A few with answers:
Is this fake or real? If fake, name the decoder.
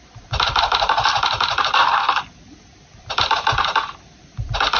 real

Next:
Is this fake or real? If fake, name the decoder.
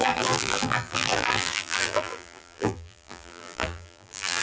fake, vocoder, BigVGAN v2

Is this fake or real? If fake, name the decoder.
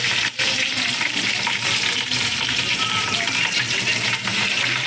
fake, vocoder, BigVGAN v2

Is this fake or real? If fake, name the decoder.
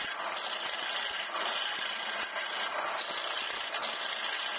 real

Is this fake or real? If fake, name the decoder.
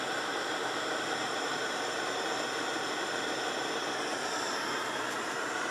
fake, vocoder, BigVGAN v2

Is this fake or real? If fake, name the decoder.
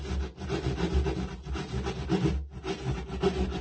real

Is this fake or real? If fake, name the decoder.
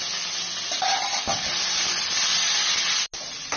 real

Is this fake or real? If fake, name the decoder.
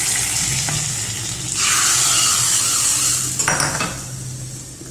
real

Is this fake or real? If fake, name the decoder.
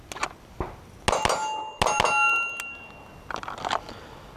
real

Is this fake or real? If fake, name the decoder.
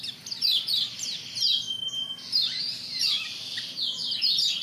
fake, vocoder, BigVGAN v2